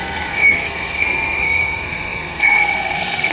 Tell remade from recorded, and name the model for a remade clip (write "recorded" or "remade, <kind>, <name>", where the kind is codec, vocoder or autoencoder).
remade, codec, SNAC